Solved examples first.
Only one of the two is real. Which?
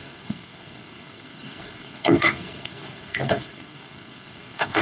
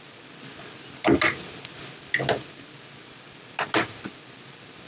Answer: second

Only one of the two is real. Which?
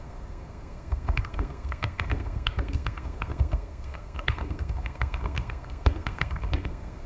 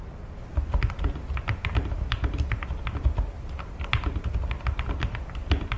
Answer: second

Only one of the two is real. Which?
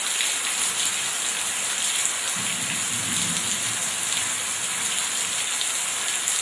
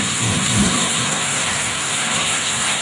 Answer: first